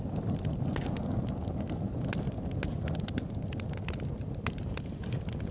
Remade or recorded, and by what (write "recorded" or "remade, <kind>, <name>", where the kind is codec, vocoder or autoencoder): recorded